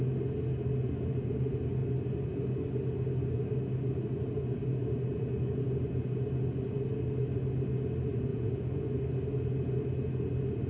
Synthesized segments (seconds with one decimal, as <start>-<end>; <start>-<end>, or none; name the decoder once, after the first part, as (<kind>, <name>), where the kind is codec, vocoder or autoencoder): 8.3-8.8 (vocoder, Vocos)

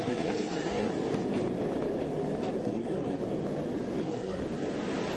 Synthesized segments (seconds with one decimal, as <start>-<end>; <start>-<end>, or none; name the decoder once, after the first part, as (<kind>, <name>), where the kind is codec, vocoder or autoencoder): 0.0-0.9 (codec, SNAC); 2.6-3.2; 4.0-4.4

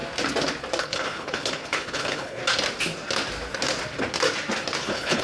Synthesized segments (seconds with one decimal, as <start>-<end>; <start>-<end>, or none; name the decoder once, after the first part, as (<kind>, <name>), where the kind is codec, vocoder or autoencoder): 0.8-2.4 (codec, HILCodec); 4.8-5.2

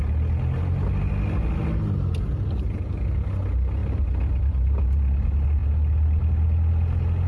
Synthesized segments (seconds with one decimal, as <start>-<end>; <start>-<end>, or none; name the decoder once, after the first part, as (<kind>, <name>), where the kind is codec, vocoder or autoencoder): none

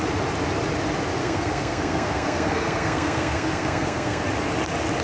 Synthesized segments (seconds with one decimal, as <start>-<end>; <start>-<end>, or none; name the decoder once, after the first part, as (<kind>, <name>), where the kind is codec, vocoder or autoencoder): 1.2-4.2 (codec, SNAC)

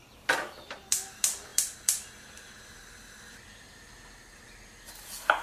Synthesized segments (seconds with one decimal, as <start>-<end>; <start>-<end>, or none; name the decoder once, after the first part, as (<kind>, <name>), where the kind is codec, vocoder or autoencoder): none

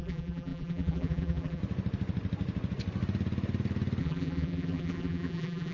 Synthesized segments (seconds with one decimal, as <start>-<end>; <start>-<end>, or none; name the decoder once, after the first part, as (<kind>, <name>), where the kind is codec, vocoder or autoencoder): 0.0-1.6 (vocoder, BigVGAN v2); 4.0-5.7